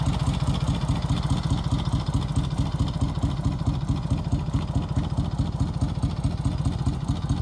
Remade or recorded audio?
recorded